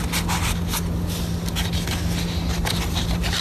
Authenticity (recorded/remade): recorded